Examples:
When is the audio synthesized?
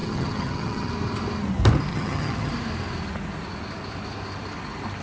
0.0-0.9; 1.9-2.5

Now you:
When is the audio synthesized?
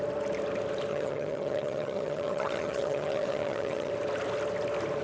0.9-3.9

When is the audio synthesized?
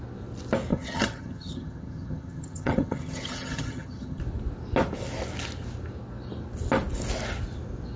0.7-4.2